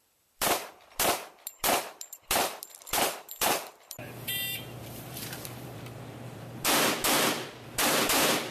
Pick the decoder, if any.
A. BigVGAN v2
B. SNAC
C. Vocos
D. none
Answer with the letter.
A